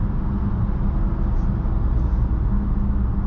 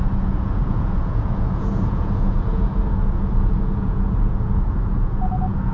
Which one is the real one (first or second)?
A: first